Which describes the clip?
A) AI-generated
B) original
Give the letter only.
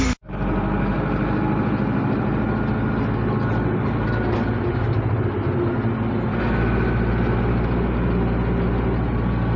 B